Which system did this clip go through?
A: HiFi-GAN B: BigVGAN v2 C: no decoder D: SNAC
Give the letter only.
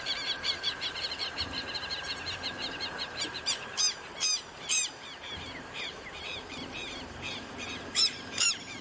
B